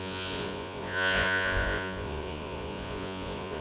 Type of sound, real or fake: fake